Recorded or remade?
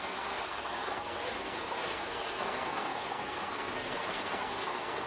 remade